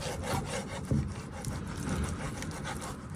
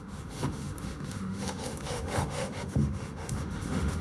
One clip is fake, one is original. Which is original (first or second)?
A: first